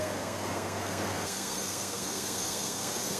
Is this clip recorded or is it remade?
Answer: remade